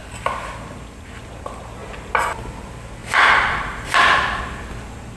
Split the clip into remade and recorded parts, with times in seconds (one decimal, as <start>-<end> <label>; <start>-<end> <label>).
0.0-1.3 remade; 1.3-3.0 recorded; 3.0-4.4 remade; 4.4-5.2 recorded